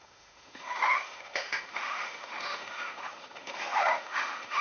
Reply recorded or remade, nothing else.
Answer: remade